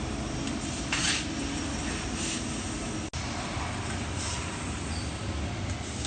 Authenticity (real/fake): real